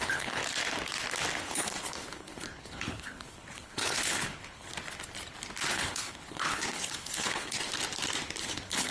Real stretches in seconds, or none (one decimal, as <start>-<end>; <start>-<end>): 0.4-1.4; 4.7-5.7; 7.7-8.4